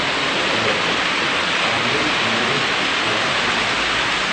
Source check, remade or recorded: recorded